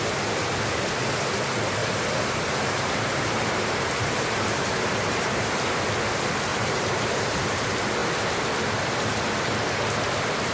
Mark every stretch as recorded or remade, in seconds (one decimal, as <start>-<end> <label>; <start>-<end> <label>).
0.0-1.8 recorded; 1.8-5.5 remade; 5.5-6.5 recorded; 6.5-7.6 remade; 7.6-10.5 recorded